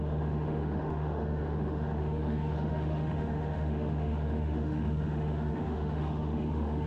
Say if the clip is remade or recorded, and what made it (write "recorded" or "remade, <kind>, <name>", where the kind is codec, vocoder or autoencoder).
remade, autoencoder, DAC-VAE